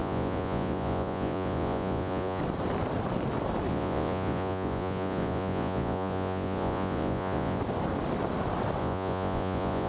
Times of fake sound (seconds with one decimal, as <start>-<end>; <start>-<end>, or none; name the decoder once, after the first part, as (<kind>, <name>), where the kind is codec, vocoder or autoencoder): 0.0-2.4 (vocoder, Vocos); 3.7-7.6; 8.8-9.9

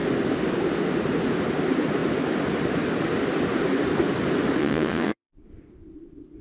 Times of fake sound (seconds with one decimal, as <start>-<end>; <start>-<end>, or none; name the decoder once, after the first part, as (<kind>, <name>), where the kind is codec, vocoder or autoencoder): 4.6-5.3 (vocoder, WaveNeXt)

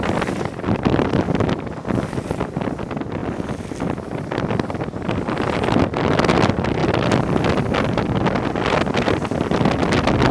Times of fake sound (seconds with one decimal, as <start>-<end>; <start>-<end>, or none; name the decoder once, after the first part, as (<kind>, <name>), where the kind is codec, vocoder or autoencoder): none

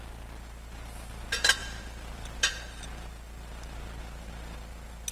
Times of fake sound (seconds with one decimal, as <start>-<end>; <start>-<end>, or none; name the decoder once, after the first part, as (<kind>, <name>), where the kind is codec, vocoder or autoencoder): 1.6-2.5 (vocoder, BigVGAN v2)

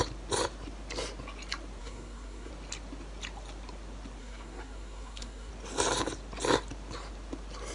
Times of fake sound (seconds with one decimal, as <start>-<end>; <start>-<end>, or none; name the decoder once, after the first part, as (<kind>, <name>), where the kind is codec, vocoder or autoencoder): 1.8-2.5 (codec, SNAC); 4.2-5.5

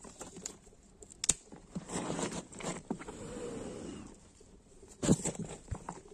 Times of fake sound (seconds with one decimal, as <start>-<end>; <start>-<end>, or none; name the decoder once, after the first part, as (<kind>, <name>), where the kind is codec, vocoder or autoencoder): 0.0-1.1 (vocoder, BigVGAN v2); 1.6-3.0; 3.9-6.1

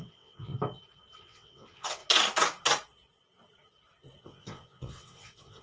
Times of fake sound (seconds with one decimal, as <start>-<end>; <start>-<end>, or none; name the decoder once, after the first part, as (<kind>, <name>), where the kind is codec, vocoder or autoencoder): 0.0-0.5 (vocoder, WaveNeXt); 1.2-2.0; 4.2-5.6